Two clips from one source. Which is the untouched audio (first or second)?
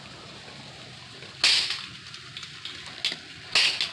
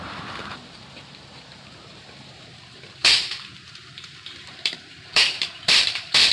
first